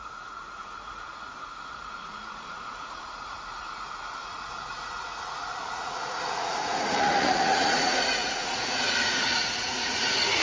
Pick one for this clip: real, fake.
fake